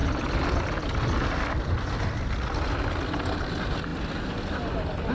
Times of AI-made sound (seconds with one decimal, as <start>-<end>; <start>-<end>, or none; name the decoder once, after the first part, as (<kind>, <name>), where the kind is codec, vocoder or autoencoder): none